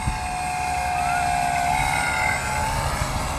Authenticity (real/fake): real